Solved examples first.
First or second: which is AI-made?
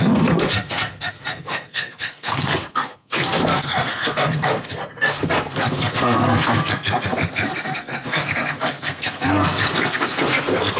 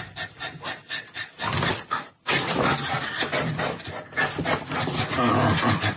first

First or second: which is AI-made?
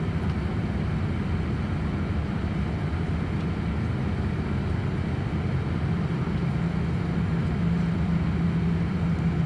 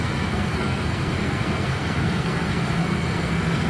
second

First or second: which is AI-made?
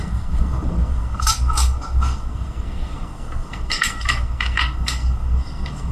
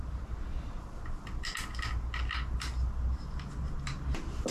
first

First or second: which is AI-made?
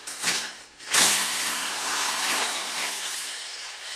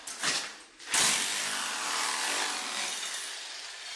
first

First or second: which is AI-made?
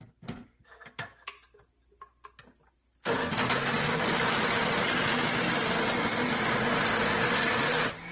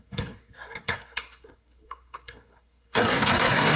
second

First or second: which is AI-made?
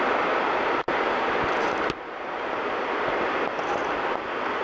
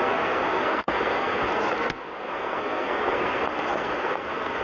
second